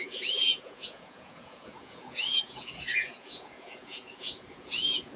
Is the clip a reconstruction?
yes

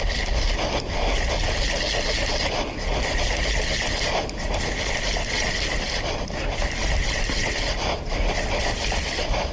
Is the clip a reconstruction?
no